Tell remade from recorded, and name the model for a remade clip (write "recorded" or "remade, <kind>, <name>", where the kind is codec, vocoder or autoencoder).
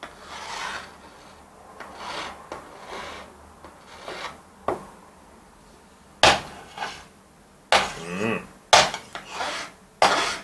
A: recorded